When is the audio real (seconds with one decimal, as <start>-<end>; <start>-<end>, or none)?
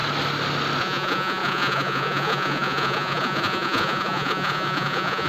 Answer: 0.0-0.8